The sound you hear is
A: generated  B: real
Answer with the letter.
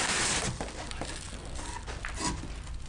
B